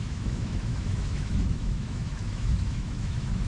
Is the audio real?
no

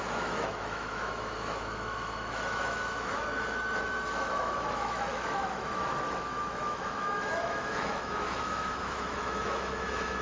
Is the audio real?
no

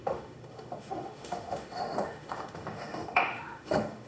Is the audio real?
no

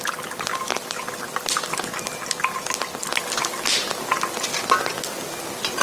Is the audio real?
yes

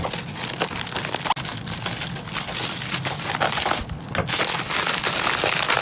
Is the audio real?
yes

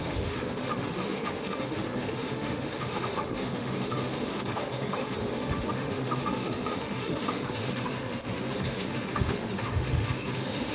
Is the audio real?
no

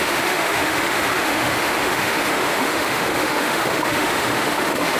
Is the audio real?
no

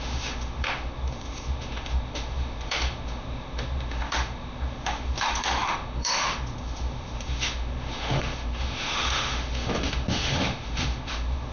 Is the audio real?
no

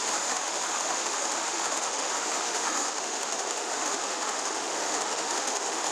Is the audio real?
no